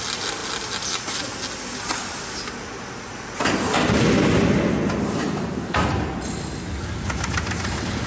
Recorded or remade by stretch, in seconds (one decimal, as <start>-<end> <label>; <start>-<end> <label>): 0.0-8.1 recorded